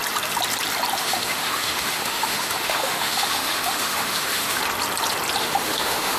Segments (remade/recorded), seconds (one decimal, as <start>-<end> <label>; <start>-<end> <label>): 0.0-1.0 recorded; 1.0-4.6 remade; 4.6-5.4 recorded; 5.4-6.2 remade